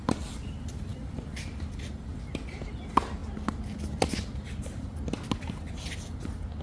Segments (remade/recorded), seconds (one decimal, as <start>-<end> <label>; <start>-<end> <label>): 0.0-6.6 recorded